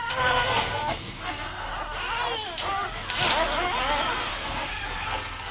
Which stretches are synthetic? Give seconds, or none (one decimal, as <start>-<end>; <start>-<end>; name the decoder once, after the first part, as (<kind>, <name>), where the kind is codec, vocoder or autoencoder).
0.0-1.7 (codec, SNAC); 4.2-5.5